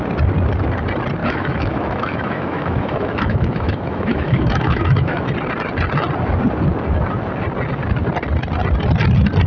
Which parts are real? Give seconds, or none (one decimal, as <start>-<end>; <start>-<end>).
0.0-1.2; 5.2-9.5